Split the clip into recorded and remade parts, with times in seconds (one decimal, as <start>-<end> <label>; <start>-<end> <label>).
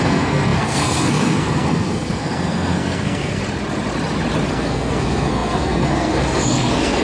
0.0-3.4 remade; 3.4-4.5 recorded; 4.5-7.0 remade